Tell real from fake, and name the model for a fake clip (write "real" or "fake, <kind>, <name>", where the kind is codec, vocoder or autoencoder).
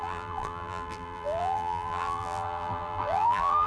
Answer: fake, vocoder, BigVGAN v2